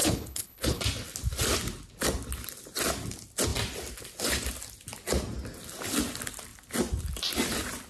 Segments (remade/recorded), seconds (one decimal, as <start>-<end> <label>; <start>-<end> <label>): 0.0-0.8 remade; 0.8-7.9 recorded